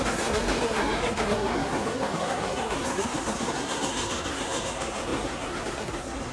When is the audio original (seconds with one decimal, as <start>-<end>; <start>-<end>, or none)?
none